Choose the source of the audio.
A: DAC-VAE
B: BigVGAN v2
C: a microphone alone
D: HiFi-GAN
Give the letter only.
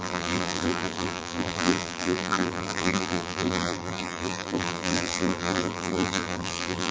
B